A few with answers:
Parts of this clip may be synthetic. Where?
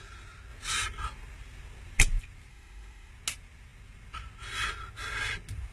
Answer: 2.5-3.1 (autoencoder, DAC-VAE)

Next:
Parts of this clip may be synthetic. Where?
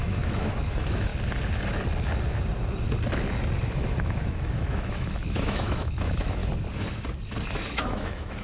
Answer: 0.0-1.1 (autoencoder, DAC-VAE); 3.6-6.4; 7.7-8.4